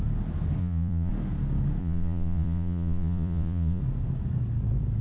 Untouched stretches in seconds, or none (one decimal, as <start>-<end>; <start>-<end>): 0.0-0.6; 1.1-1.8; 3.8-5.0